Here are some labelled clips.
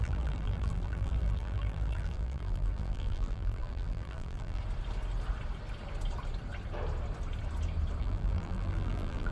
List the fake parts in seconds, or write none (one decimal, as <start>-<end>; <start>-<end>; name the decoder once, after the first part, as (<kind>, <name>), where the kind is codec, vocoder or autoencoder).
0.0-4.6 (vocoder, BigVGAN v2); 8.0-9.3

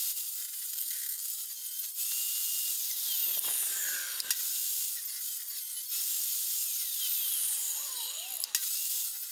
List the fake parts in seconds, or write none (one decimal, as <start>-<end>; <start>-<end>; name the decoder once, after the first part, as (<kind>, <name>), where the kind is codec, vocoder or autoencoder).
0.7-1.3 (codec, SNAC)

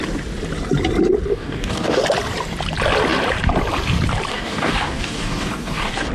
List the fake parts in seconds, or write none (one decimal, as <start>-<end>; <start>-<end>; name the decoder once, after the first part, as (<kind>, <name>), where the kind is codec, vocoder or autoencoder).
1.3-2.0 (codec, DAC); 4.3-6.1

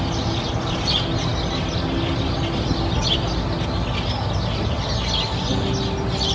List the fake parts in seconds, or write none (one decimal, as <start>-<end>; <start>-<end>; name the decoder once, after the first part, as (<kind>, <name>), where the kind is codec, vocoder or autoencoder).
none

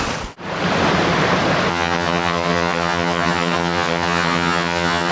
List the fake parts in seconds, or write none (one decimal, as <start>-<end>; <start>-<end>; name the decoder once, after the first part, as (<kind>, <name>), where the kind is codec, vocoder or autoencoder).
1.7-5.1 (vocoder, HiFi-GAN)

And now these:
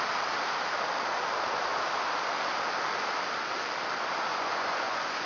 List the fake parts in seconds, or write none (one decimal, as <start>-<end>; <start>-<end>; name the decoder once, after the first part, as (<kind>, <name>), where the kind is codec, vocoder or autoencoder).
4.3-5.3 (vocoder, Vocos)